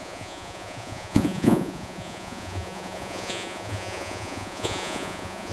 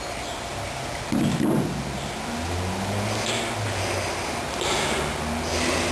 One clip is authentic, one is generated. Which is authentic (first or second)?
second